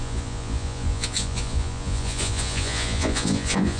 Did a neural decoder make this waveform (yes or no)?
yes